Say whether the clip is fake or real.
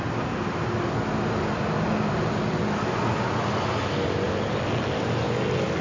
real